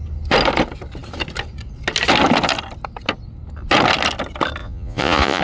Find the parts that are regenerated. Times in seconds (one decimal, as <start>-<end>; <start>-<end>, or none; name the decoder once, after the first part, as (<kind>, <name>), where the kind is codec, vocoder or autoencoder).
4.6-5.4 (vocoder, Vocos)